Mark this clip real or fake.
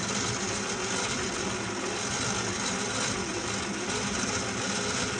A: real